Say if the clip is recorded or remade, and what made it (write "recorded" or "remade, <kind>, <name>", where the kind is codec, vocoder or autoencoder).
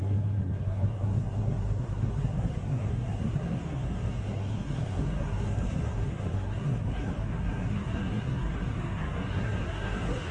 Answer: remade, codec, SNAC